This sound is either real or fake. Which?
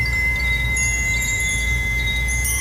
fake